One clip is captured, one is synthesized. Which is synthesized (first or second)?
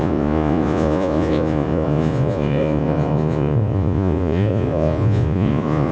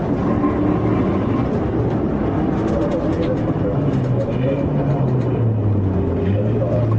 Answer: first